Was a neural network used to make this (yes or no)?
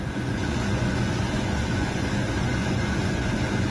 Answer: yes